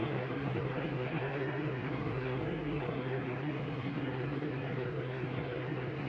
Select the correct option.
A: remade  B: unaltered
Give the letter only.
A